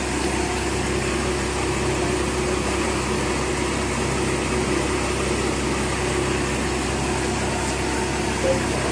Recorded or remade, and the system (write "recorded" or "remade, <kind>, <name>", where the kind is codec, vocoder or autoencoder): recorded